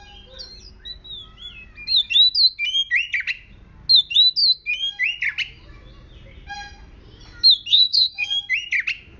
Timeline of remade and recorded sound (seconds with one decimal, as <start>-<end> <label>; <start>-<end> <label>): 0.0-7.7 recorded; 7.7-8.3 remade; 8.3-9.2 recorded